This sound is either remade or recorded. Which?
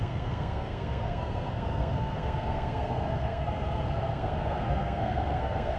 remade